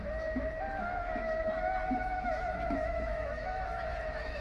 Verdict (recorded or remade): remade